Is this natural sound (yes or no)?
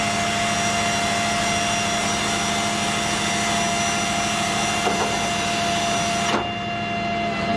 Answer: yes